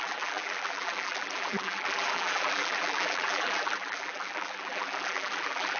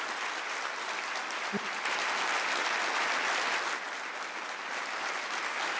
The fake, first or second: first